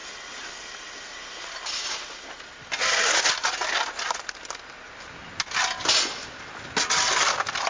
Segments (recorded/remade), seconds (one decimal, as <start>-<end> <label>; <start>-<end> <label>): 0.0-7.7 recorded